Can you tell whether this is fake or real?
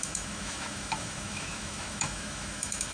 fake